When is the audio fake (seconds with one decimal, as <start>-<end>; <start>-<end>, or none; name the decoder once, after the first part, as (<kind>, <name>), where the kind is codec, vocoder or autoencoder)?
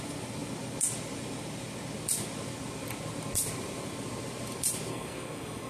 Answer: 4.9-5.7 (codec, SNAC)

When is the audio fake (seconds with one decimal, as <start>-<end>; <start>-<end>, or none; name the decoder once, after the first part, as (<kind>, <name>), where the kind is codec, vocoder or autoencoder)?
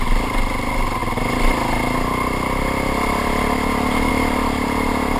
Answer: none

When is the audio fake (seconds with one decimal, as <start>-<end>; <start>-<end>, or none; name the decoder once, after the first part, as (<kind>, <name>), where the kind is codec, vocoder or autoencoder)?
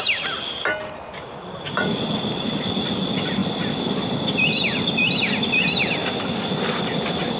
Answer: none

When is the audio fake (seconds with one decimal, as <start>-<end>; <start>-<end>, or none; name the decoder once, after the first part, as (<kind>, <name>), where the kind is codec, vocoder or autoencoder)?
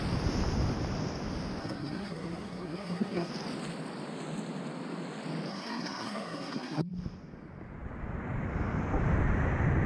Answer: 1.6-3.3 (codec, SNAC); 5.5-6.9